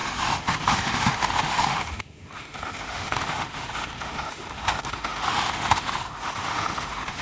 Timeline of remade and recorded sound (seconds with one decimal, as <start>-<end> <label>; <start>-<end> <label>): 0.0-7.2 remade